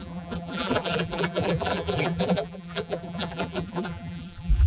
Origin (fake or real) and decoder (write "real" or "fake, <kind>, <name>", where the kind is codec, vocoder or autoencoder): fake, vocoder, BigVGAN v2